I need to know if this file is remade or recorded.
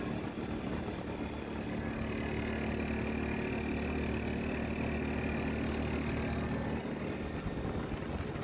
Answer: recorded